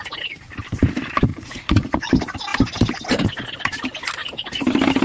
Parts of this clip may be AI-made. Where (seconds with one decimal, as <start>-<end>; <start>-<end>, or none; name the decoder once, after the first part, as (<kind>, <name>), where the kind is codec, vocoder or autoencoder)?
1.3-2.1 (vocoder, Vocos)